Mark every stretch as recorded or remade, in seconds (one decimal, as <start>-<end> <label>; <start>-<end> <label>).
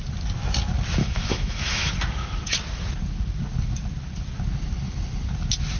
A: 0.0-1.0 recorded; 1.0-1.9 remade; 1.9-5.8 recorded